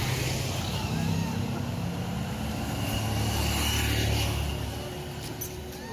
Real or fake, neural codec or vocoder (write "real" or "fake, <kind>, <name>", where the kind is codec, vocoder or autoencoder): real